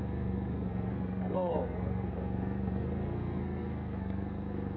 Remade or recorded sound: remade